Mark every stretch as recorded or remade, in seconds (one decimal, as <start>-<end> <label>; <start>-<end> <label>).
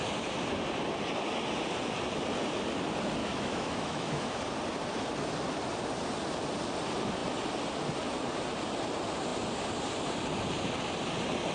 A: 0.0-3.2 recorded; 3.2-4.4 remade; 4.4-11.5 recorded